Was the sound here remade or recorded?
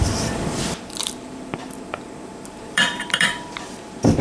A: remade